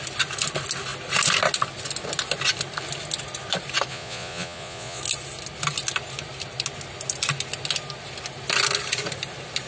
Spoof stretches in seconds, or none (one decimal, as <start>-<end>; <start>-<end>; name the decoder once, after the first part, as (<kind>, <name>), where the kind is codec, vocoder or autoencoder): 3.9-5.0 (vocoder, Vocos)